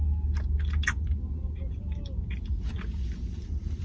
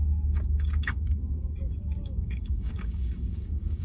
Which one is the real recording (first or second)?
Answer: first